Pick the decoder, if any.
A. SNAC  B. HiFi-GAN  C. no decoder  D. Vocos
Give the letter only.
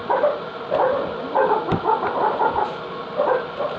C